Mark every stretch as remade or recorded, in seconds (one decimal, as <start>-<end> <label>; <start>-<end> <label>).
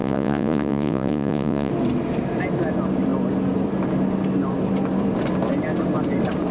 0.0-1.7 remade; 1.7-6.5 recorded